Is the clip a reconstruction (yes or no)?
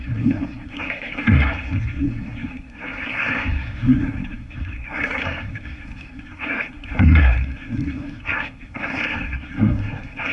yes